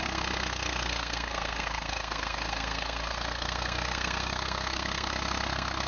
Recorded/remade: remade